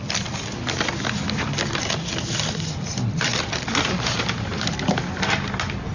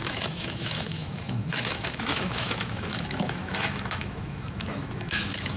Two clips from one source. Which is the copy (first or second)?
second